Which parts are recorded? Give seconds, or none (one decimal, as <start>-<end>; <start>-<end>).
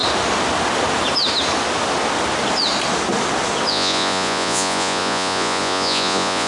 0.0-3.7